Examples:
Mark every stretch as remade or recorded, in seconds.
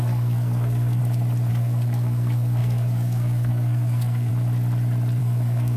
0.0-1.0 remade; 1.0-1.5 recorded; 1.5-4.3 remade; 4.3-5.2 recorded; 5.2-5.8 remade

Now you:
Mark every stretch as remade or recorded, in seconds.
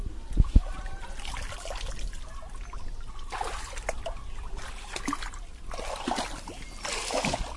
0.0-7.6 recorded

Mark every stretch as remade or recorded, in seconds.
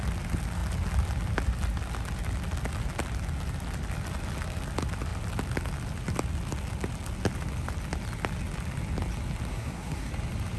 0.0-9.5 recorded; 9.5-10.1 remade; 10.1-10.6 recorded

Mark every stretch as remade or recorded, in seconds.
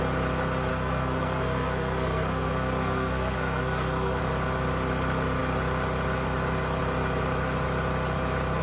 0.0-0.7 recorded; 0.7-4.2 remade; 4.2-8.6 recorded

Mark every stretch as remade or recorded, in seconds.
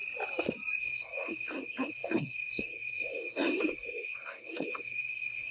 0.0-0.8 recorded; 0.8-5.5 remade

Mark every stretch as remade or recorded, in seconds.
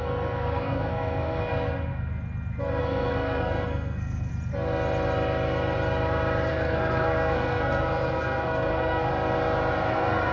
0.0-1.5 remade; 1.5-2.8 recorded; 2.8-4.3 remade; 4.3-6.5 recorded; 6.5-9.1 remade; 9.1-9.9 recorded; 9.9-10.3 remade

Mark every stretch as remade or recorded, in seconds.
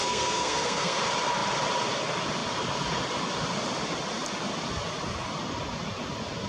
0.0-1.0 remade; 1.0-6.5 recorded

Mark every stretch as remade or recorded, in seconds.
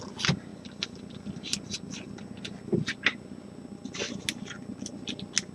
0.0-5.5 recorded